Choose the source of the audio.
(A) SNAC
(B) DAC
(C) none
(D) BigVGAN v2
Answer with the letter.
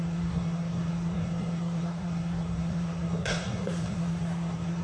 A